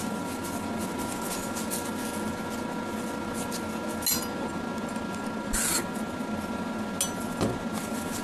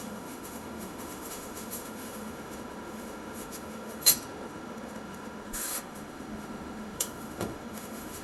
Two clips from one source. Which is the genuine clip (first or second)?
first